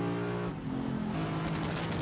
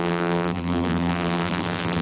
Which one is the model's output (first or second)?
second